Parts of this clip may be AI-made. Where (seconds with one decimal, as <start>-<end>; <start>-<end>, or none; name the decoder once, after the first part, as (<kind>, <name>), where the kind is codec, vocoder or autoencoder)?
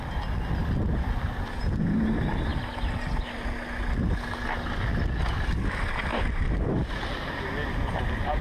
0.6-1.6 (vocoder, BigVGAN v2); 2.5-4.0